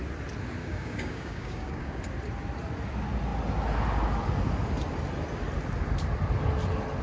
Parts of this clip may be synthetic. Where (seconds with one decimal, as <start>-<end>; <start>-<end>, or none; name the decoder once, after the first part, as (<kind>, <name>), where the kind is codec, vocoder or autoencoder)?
0.6-2.0 (codec, DAC)